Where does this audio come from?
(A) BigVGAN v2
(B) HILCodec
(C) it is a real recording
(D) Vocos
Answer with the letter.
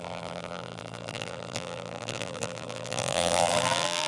A